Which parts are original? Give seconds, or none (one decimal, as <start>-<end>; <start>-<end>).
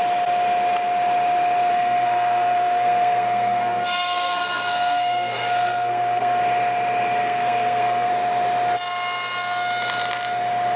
0.0-1.7; 6.4-7.2; 8.1-10.8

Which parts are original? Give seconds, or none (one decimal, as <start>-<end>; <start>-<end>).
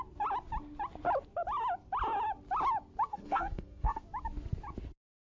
0.0-3.1; 4.0-5.2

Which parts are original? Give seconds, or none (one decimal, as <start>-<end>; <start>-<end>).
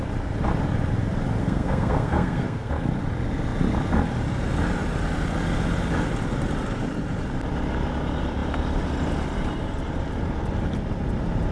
0.0-1.4; 2.7-11.5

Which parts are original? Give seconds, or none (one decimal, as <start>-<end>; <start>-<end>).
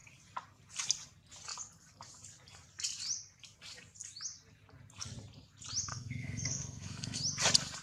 0.0-5.9; 7.2-7.8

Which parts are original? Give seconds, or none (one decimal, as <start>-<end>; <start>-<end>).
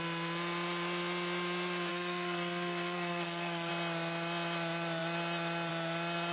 0.0-1.9; 3.7-6.3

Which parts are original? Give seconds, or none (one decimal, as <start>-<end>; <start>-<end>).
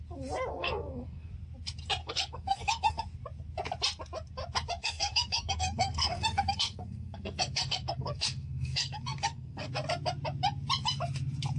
0.0-0.5; 1.3-2.0; 3.0-4.8; 9.7-11.6